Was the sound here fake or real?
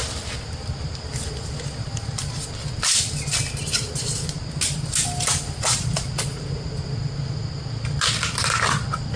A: real